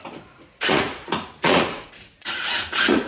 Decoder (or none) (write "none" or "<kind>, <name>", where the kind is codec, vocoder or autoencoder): vocoder, Vocos